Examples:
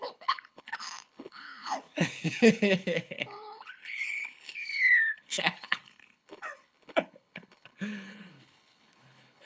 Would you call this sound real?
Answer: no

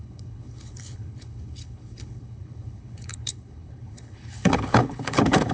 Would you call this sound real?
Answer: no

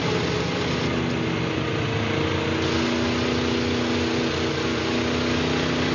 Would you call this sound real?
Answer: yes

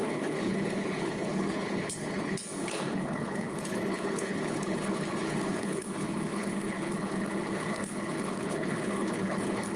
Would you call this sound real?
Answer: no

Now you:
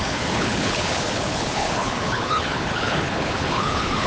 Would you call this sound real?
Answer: no